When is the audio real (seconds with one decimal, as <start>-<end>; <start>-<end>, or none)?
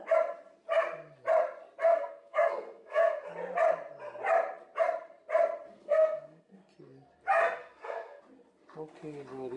0.0-1.8; 3.3-5.7; 6.6-7.6; 8.2-9.6